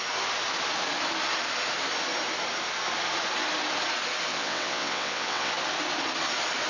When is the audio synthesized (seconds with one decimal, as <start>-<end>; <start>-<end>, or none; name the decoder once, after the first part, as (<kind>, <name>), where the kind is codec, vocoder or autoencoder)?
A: 4.3-5.5 (vocoder, WaveNeXt)